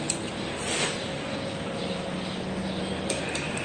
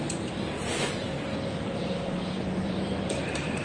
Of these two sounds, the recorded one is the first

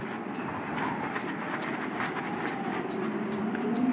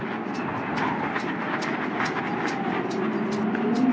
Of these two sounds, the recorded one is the second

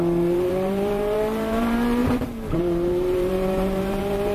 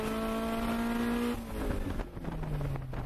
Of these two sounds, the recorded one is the second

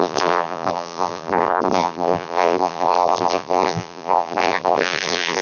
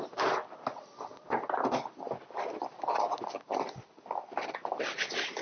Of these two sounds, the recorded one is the second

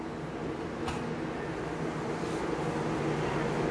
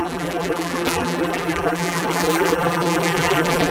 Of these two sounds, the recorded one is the first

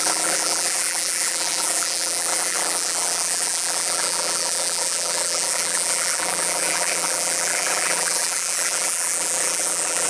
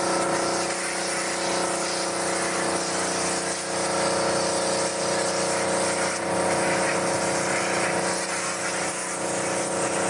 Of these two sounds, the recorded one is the second